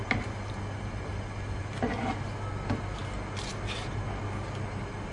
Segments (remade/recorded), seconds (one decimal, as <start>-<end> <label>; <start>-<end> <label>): 0.0-5.1 recorded